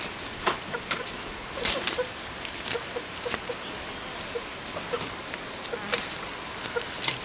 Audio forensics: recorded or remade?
recorded